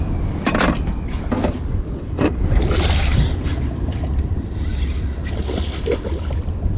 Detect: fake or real fake